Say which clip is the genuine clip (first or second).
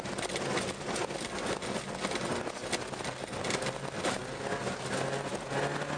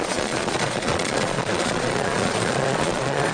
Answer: first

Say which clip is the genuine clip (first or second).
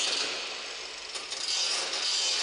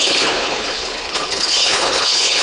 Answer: first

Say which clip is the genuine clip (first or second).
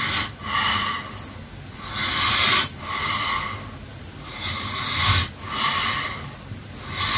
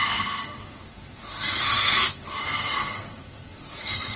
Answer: first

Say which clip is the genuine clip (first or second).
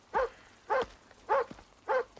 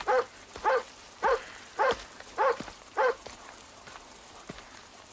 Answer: first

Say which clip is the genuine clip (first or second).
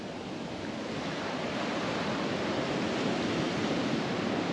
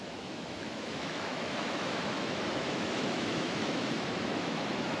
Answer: first